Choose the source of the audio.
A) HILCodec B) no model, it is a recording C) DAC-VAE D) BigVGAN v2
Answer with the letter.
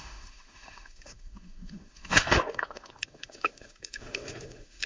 C